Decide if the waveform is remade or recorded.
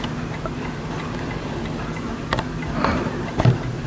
recorded